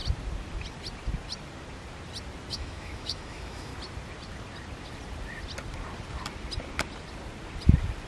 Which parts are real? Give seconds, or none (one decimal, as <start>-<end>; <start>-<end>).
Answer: 0.0-2.5; 3.7-8.1